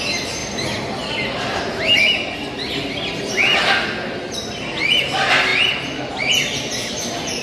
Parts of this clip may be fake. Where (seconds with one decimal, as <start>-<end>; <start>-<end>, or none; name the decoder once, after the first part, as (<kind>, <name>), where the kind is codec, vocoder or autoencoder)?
none